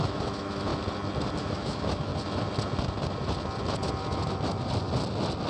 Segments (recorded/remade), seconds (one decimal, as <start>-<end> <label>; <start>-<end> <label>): 0.0-0.7 remade; 0.7-1.4 recorded; 1.4-2.1 remade; 2.1-5.5 recorded